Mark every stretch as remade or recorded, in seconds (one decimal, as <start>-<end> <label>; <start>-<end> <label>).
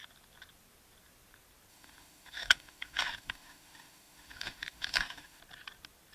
0.0-1.7 recorded; 1.7-5.4 remade; 5.4-6.1 recorded